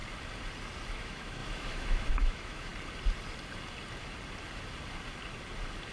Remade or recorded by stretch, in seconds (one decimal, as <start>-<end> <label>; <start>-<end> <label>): 0.0-0.9 recorded; 0.9-2.7 remade; 2.7-5.9 recorded

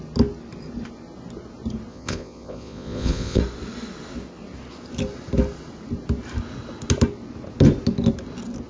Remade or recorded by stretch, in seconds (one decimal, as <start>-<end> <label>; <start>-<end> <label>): 0.0-1.9 recorded; 1.9-3.4 remade; 3.4-8.7 recorded

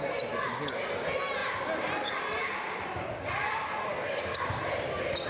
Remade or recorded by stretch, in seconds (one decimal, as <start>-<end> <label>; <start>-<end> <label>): 0.0-3.9 recorded; 3.9-4.6 remade; 4.6-5.3 recorded

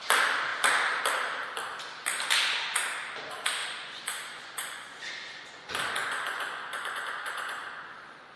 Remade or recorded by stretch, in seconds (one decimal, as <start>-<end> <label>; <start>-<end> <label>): 0.0-3.6 recorded; 3.6-8.4 remade

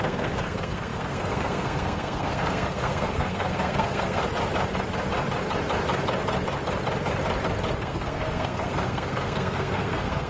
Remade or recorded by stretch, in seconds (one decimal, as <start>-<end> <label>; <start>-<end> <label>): 0.0-4.2 remade; 4.2-7.8 recorded; 7.8-10.3 remade

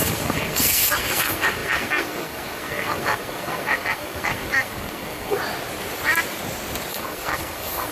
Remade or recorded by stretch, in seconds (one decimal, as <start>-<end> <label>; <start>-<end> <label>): 0.0-5.4 remade; 5.4-6.9 recorded; 6.9-7.9 remade

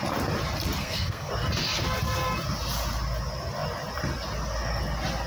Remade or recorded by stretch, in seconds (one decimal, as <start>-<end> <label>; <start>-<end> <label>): 0.0-0.8 recorded; 0.8-1.3 remade; 1.3-5.3 recorded